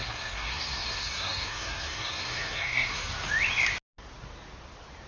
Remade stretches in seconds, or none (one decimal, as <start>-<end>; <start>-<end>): 0.0-3.1